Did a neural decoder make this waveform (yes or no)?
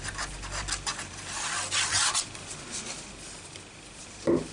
yes